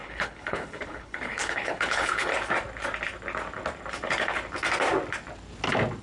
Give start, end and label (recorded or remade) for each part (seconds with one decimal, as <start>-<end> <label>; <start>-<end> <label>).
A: 0.0-2.3 remade; 2.3-6.0 recorded